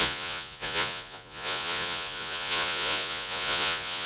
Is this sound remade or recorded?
remade